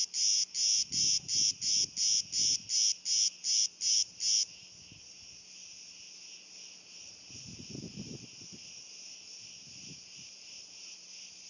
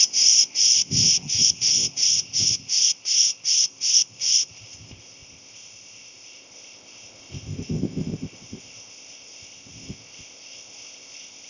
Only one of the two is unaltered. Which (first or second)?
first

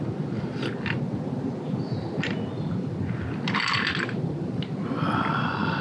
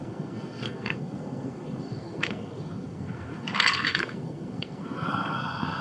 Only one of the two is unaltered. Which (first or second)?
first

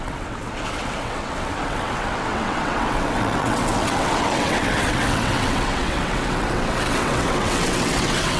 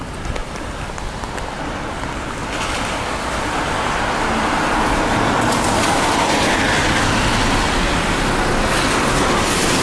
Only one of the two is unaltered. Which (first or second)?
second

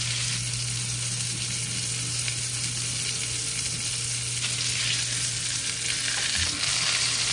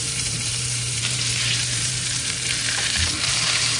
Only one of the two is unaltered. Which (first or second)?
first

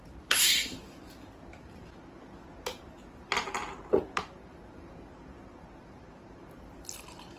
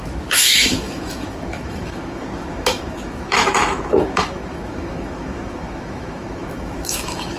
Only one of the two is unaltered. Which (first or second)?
first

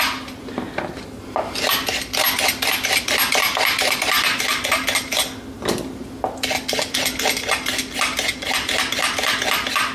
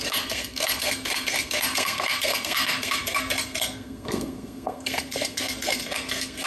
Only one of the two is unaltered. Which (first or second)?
first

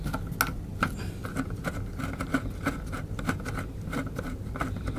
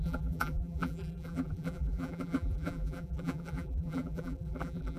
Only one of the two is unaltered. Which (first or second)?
first